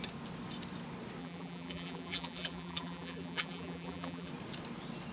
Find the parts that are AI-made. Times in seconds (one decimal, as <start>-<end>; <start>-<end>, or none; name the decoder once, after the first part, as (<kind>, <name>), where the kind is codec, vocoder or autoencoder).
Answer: 1.2-4.3 (vocoder, BigVGAN v2)